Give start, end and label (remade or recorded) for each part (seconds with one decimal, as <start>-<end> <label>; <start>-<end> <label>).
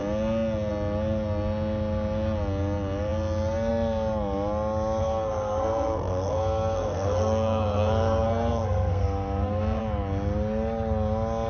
0.0-5.0 recorded; 5.0-9.8 remade; 9.8-11.5 recorded